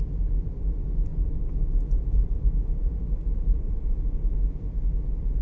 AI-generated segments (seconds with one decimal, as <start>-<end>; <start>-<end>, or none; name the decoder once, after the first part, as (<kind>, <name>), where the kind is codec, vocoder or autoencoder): 1.1-4.3 (vocoder, BigVGAN v2)